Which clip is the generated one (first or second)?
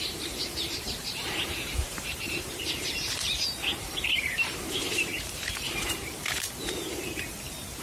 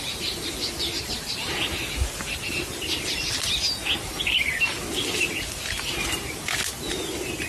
first